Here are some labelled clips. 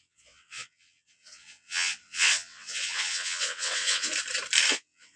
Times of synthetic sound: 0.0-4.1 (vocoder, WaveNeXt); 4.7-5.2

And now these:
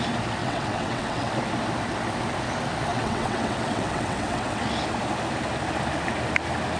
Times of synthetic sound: 0.4-1.3 (vocoder, WaveNeXt); 2.9-4.6